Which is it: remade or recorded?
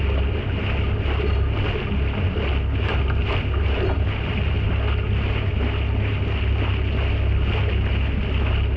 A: recorded